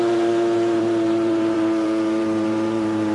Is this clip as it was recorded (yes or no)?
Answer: no